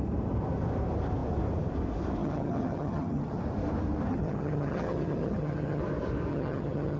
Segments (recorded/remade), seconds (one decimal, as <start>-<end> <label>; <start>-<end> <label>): 0.0-2.2 recorded; 2.2-3.4 remade; 3.4-4.1 recorded; 4.1-5.8 remade; 5.8-6.3 recorded; 6.3-7.0 remade